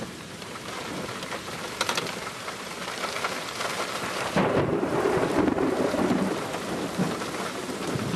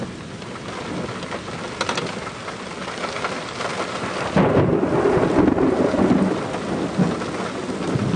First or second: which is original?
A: second